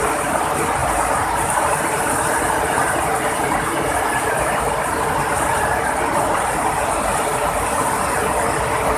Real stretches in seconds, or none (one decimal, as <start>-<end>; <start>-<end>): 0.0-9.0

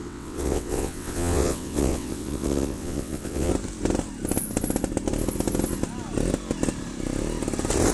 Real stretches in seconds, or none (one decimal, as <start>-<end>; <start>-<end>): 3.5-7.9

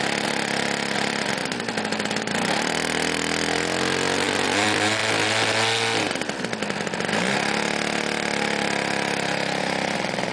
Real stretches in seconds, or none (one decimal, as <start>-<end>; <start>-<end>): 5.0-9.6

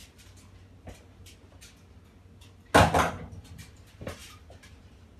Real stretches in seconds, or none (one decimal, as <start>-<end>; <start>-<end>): 0.0-3.1

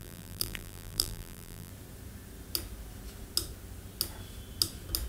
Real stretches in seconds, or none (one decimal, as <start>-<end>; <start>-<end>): 1.7-5.1

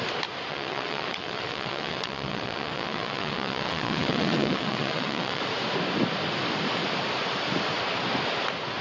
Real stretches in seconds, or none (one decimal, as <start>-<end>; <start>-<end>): 0.0-0.5; 5.4-8.8

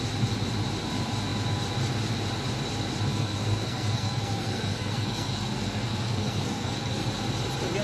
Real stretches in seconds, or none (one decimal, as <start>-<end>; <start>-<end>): 0.0-3.1; 7.1-7.8